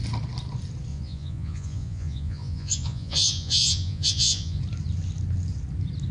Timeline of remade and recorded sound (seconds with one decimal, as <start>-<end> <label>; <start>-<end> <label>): 0.0-0.9 recorded; 0.9-4.6 remade; 4.6-6.1 recorded